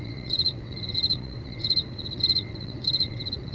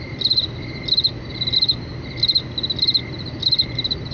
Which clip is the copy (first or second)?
first